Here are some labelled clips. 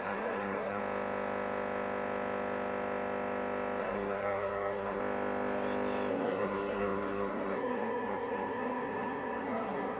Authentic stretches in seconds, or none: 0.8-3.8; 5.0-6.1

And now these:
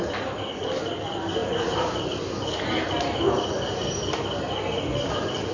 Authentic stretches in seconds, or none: 0.0-5.5